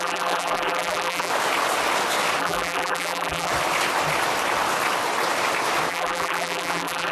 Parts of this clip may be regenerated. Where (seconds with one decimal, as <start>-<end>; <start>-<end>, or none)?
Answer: 0.0-1.3; 2.4-3.5; 5.9-7.1